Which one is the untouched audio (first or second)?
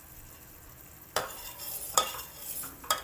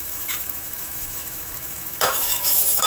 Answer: first